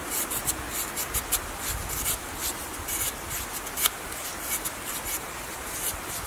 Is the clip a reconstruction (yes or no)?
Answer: no